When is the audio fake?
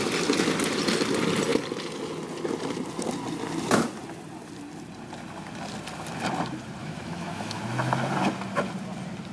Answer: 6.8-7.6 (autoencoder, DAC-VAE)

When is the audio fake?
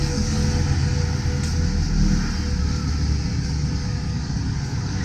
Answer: 0.0-0.4 (codec, DAC); 3.4-5.0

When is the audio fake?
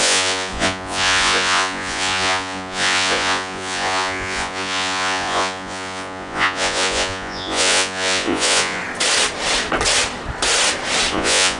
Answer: 0.0-8.8 (vocoder, Vocos); 11.1-11.6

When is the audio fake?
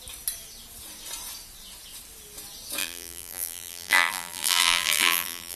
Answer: 2.8-5.6 (vocoder, BigVGAN v2)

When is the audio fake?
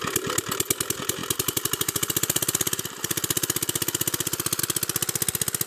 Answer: 1.2-4.6 (vocoder, BigVGAN v2)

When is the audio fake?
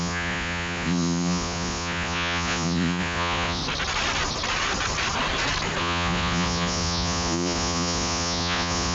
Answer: 0.0-3.6 (vocoder, Vocos); 5.8-8.9